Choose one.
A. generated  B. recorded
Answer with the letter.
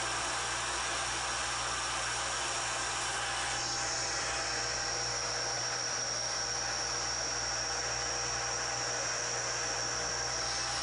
B